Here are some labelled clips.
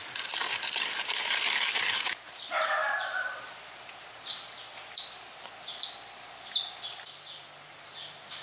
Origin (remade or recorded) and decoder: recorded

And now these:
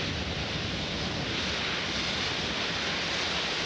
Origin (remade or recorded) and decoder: recorded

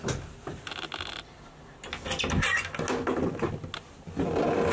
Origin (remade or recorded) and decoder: recorded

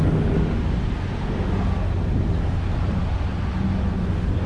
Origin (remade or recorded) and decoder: recorded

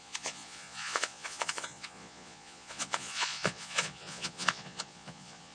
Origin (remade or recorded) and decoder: remade, vocoder, Vocos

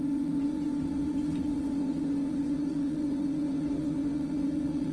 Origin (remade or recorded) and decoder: remade, vocoder, Vocos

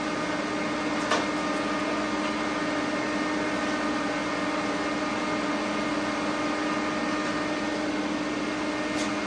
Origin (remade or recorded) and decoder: recorded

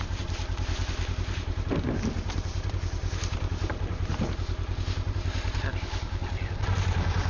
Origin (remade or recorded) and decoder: recorded